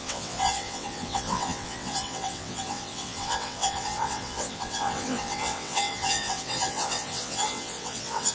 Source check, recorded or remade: remade